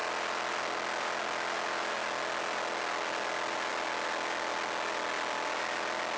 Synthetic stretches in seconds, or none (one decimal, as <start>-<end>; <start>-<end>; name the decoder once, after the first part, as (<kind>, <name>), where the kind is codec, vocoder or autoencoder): none